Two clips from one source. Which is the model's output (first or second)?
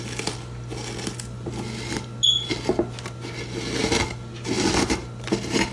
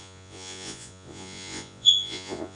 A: second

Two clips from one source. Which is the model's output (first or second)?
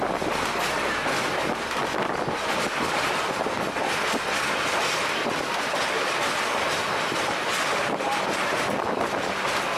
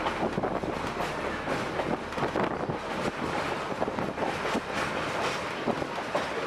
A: second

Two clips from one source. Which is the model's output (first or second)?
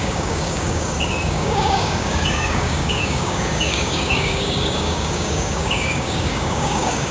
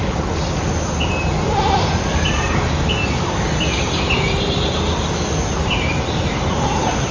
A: first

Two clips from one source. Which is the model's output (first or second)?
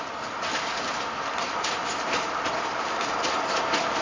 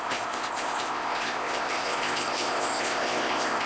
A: second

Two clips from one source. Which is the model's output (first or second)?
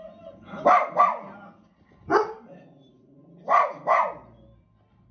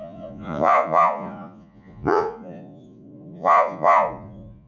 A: second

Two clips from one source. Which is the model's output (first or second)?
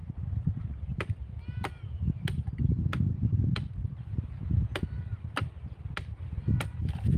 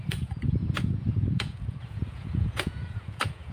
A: second